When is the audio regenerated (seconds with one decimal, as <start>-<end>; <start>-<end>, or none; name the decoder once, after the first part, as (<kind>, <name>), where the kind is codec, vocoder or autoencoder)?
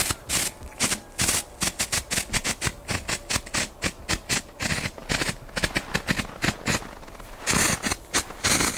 none